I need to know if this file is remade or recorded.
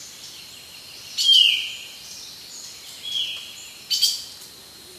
recorded